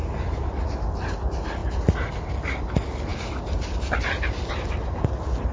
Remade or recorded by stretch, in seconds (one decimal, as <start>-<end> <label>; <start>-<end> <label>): 0.0-3.1 recorded; 3.1-4.3 remade; 4.3-5.5 recorded